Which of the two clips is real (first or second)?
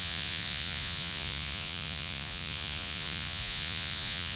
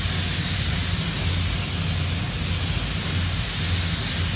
second